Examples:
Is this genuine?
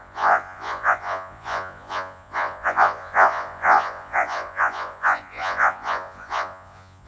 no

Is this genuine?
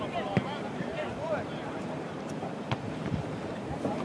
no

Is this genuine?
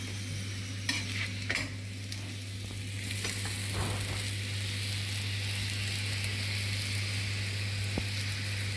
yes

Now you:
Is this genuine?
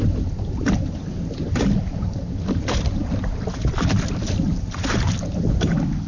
yes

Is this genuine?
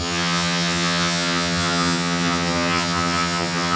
no